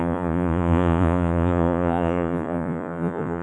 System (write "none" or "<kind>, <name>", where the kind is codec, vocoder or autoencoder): vocoder, Vocos